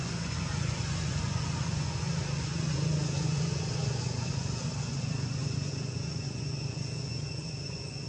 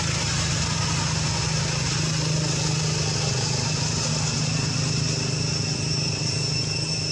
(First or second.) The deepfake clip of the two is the first